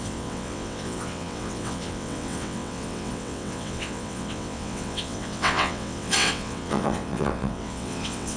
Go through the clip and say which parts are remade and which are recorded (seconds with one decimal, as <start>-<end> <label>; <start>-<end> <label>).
0.0-8.4 remade